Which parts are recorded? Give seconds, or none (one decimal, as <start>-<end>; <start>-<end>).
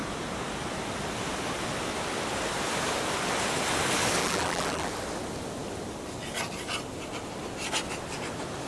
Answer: 0.0-4.2; 4.9-8.7